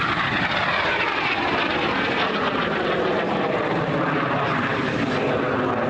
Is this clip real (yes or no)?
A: yes